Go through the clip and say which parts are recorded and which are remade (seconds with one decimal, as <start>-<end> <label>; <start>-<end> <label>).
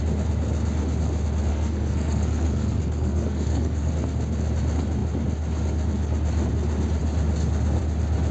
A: 0.0-1.5 recorded; 1.5-3.9 remade; 3.9-8.3 recorded